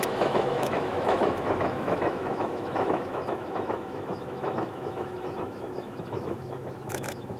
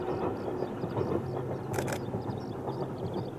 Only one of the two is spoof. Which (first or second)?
first